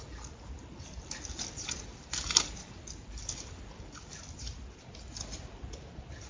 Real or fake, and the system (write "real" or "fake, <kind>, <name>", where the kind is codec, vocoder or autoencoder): real